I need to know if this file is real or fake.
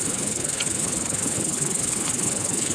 fake